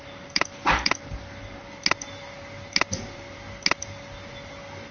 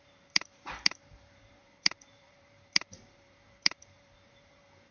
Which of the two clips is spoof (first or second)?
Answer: second